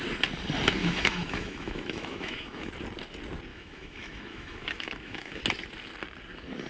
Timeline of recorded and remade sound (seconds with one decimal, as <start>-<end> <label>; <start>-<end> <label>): 0.0-0.8 recorded; 0.8-2.7 remade; 2.7-3.5 recorded; 3.5-5.4 remade; 5.4-6.7 recorded